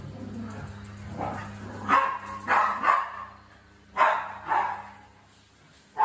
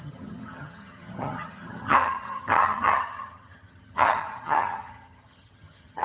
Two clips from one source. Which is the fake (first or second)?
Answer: second